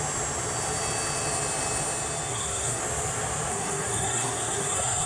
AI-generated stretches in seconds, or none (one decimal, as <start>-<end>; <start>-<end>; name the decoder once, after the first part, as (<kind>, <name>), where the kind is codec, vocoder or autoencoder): 2.3-2.8 (codec, SNAC); 3.5-5.1